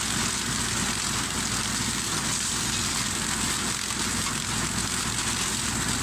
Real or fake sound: real